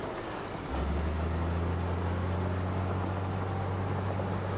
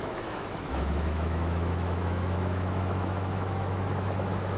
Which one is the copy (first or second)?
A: second